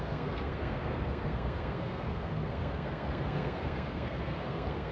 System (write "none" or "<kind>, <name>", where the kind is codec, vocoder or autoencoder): codec, SNAC